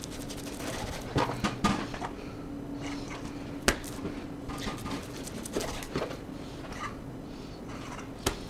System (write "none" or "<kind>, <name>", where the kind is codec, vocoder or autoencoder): none